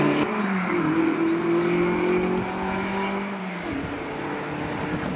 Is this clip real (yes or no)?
yes